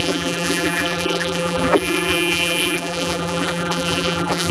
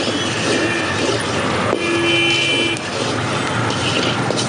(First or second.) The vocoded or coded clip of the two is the first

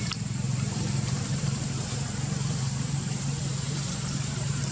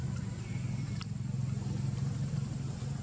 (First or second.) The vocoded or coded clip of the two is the first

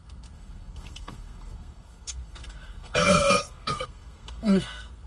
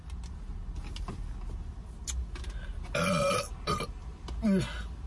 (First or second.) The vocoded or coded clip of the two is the first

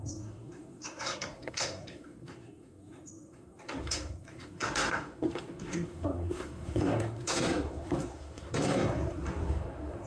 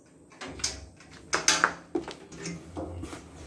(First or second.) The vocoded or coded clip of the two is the first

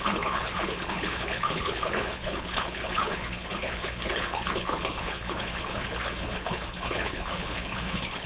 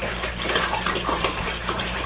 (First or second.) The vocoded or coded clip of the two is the first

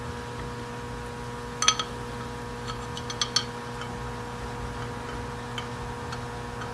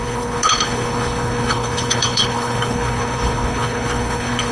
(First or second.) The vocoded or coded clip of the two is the second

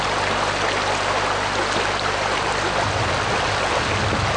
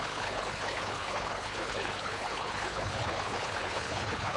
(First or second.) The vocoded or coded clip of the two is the second